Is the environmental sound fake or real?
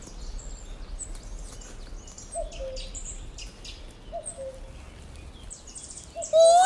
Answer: real